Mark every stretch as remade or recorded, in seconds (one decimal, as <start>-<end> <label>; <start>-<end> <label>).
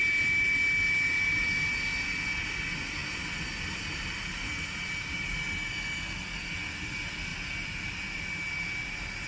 0.0-9.3 recorded